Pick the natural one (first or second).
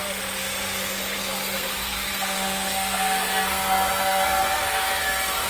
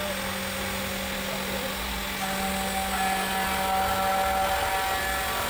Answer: second